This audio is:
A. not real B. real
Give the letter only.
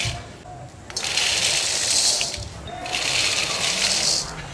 B